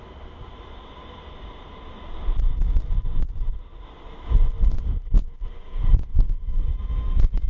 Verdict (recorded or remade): recorded